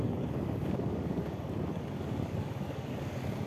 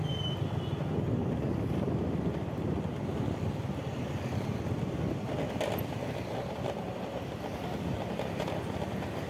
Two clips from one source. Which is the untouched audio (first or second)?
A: second